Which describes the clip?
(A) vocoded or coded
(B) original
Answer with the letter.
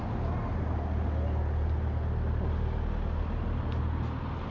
B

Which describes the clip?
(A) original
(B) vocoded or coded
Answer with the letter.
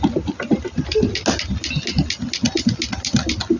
A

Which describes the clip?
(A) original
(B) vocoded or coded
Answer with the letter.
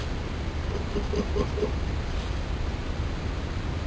A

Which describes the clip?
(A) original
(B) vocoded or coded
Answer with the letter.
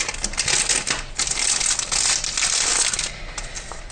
A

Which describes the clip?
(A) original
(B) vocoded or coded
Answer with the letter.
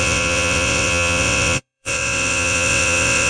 B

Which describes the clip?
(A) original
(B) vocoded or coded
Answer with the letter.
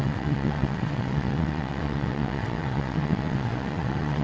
B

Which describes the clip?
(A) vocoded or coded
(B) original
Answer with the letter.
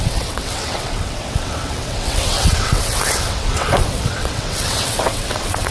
A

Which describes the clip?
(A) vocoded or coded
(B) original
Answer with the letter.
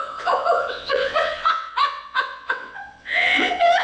A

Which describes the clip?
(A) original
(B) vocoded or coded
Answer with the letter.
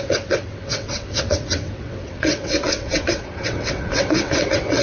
B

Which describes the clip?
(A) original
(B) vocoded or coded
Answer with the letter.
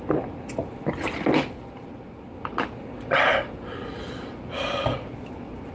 A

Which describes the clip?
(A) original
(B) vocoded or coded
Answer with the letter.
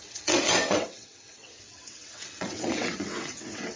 B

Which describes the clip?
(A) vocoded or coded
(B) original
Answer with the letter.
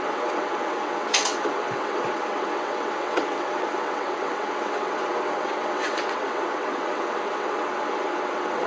A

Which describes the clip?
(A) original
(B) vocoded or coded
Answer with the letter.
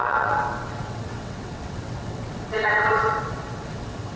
B